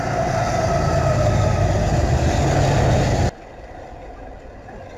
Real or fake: real